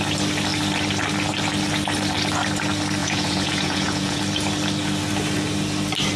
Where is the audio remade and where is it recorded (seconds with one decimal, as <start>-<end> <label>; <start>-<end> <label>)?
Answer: 0.0-3.0 recorded; 3.0-4.2 remade; 4.2-6.2 recorded